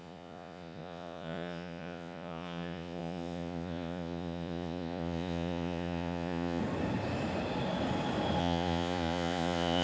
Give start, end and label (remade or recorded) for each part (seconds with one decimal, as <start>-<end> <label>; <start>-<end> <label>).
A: 0.0-6.6 remade; 6.6-8.4 recorded; 8.4-9.8 remade